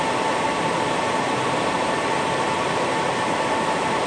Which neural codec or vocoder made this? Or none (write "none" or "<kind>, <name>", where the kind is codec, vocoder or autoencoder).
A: none